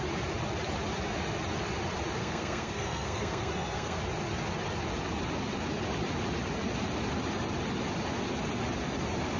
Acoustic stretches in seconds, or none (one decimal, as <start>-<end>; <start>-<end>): 0.0-2.2; 4.0-9.4